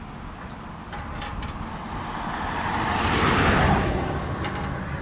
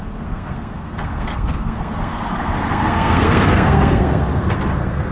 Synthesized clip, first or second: second